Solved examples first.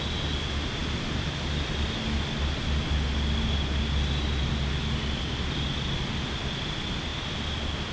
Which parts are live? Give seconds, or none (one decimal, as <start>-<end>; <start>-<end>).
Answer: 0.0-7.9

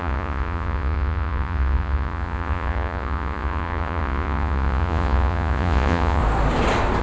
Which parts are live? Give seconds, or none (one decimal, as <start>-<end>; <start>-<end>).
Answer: 6.2-7.0

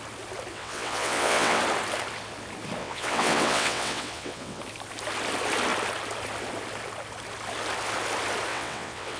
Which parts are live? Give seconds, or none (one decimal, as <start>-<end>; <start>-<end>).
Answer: 0.0-0.5; 1.6-2.8; 4.6-8.5

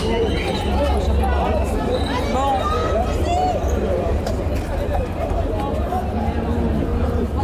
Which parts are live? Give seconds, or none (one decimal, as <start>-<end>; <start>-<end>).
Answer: 0.0-2.8; 4.4-6.9